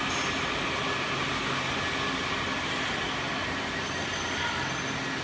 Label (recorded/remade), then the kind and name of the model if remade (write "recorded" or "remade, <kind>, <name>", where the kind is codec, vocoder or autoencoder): recorded